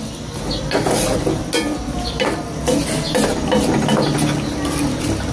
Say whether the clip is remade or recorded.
recorded